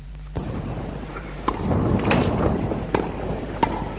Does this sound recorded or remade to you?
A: remade